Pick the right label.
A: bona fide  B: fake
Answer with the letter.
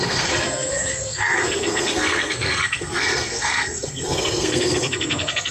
B